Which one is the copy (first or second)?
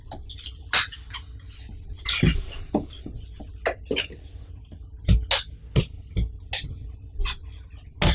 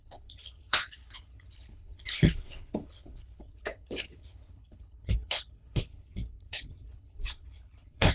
second